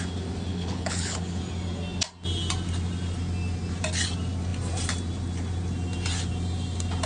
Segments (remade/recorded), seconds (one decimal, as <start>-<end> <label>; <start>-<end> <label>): 0.0-0.5 recorded; 0.5-1.4 remade; 1.4-7.1 recorded